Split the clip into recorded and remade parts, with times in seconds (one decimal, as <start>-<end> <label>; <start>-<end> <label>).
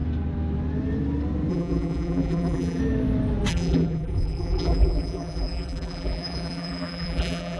0.0-1.5 recorded; 1.5-2.8 remade; 2.8-3.5 recorded; 3.5-7.6 remade